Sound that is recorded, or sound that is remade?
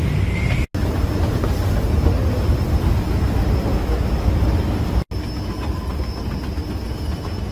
recorded